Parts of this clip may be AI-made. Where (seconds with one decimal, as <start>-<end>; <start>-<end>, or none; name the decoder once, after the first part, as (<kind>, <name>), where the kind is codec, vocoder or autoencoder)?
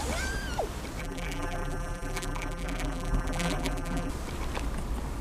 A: 1.0-4.1 (vocoder, BigVGAN v2)